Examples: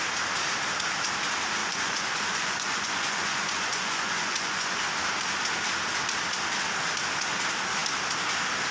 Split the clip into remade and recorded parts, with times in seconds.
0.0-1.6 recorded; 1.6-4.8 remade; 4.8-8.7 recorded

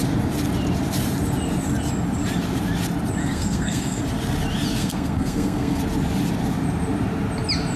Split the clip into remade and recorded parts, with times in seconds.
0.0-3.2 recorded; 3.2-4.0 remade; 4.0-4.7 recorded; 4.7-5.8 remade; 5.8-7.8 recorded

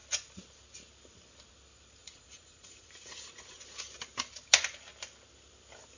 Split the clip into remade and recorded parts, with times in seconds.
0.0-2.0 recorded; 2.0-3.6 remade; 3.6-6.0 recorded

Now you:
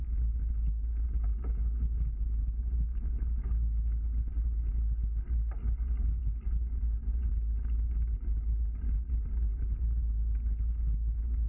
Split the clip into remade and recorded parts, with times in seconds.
0.0-11.5 recorded

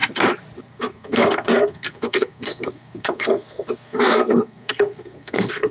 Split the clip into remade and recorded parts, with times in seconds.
0.0-0.6 recorded; 0.6-5.7 remade

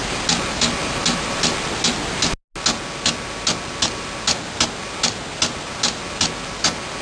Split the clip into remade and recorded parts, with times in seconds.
0.0-7.0 recorded